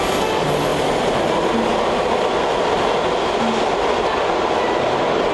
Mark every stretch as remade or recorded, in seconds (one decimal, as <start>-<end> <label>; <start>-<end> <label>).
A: 0.0-5.3 recorded